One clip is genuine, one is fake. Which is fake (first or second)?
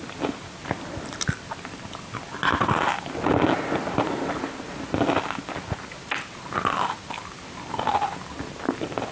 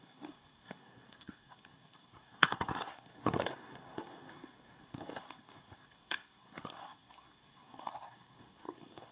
second